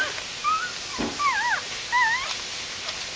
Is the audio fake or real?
real